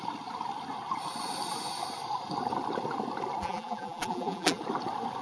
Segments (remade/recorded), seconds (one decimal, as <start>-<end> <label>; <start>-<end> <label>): 0.0-3.4 recorded; 3.4-4.6 remade; 4.6-5.2 recorded